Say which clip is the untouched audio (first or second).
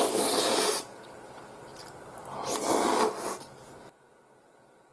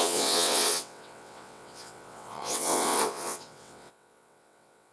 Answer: first